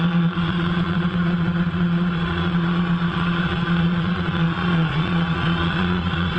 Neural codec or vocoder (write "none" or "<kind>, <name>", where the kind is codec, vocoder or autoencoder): vocoder, Vocos